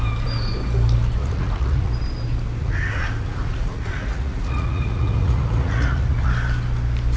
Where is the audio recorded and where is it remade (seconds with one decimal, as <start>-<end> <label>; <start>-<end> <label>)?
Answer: 0.0-1.2 recorded; 1.2-1.9 remade; 1.9-2.6 recorded; 2.6-6.3 remade; 6.3-7.2 recorded

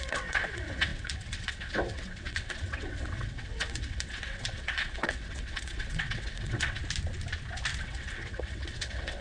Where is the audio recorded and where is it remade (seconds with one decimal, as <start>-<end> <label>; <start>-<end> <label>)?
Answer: 0.0-6.8 remade; 6.8-7.8 recorded; 7.8-9.2 remade

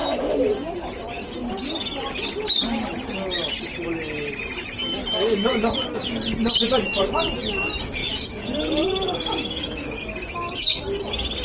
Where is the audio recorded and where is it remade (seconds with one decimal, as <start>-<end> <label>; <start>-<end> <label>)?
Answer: 0.0-8.0 recorded; 8.0-10.0 remade; 10.0-11.4 recorded

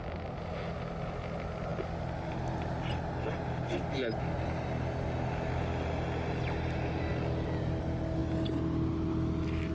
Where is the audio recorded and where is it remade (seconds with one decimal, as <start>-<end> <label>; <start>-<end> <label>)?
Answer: 0.0-9.7 recorded

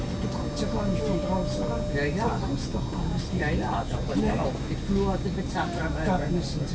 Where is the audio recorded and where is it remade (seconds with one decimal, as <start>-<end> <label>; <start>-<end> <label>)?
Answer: 0.0-6.7 recorded

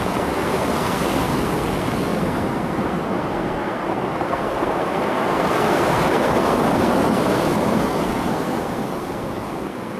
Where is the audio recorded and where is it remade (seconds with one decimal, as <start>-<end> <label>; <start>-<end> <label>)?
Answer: 0.0-10.0 remade

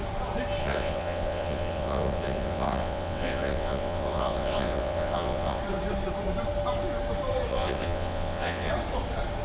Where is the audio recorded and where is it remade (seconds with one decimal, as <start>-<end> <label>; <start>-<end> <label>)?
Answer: 0.0-0.6 recorded; 0.6-5.6 remade; 5.6-7.5 recorded; 7.5-8.7 remade; 8.7-9.4 recorded

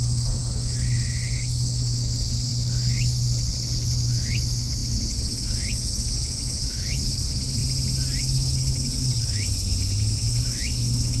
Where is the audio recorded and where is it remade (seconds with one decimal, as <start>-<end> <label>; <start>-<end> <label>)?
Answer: 0.0-7.6 remade; 7.6-8.2 recorded; 8.2-11.2 remade